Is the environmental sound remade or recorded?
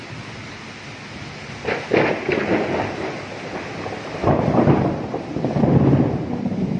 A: recorded